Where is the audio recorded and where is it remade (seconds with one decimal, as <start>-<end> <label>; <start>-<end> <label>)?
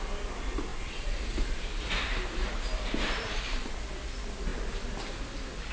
0.0-5.7 recorded